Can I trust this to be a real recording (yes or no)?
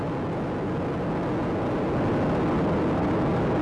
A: yes